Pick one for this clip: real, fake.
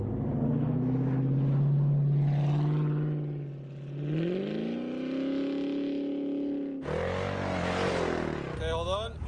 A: real